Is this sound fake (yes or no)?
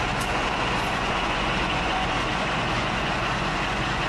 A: yes